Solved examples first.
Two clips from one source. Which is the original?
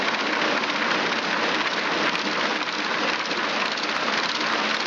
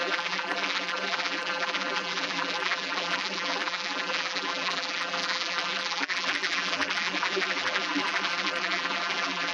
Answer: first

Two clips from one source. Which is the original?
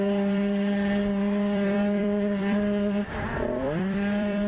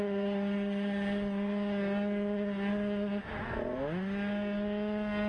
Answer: second